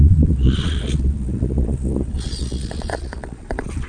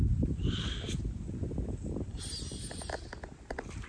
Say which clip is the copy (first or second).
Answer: first